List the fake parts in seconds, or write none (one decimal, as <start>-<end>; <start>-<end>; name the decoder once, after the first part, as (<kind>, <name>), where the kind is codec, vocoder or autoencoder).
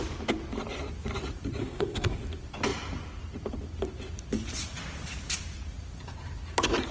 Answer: 1.6-2.2 (codec, SNAC)